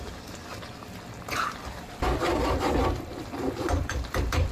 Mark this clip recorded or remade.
recorded